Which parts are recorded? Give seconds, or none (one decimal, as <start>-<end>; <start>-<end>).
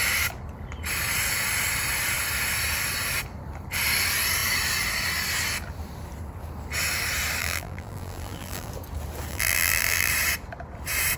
0.0-7.4; 8.7-9.3; 10.1-11.2